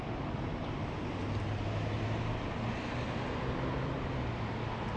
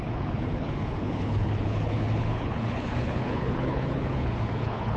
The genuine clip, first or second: first